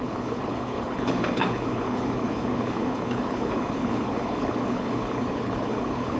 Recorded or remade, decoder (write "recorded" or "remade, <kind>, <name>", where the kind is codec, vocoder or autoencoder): remade, codec, HILCodec